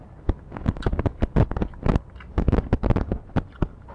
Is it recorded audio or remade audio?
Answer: recorded